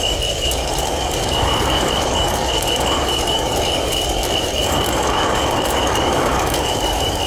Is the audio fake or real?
fake